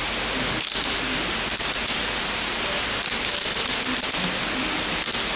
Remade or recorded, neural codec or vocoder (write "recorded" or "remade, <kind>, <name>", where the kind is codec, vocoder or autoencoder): recorded